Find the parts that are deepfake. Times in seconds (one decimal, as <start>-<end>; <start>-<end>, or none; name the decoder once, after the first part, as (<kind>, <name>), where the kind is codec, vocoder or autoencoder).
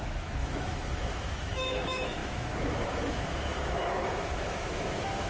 0.0-5.3 (autoencoder, DAC-VAE)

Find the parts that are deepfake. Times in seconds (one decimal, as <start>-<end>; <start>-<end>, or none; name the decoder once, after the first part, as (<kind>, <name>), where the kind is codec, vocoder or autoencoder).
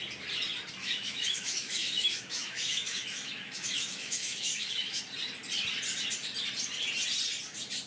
0.8-5.0 (autoencoder, DAC-VAE)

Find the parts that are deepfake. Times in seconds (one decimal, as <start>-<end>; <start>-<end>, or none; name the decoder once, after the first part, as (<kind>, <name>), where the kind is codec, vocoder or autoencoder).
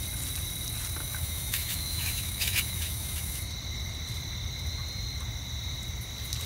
1.0-3.4 (autoencoder, DAC-VAE)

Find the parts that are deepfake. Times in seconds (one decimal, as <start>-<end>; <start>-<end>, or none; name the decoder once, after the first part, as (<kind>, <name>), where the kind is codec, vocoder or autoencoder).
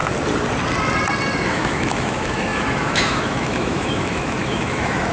1.5-5.1 (autoencoder, DAC-VAE)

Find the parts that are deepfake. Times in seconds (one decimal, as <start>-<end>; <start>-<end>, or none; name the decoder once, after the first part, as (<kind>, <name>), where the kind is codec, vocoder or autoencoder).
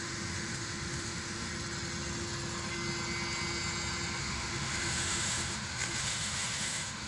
0.0-1.5 (autoencoder, DAC-VAE); 4.2-7.1